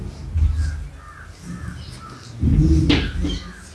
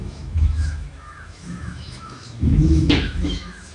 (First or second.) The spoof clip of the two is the second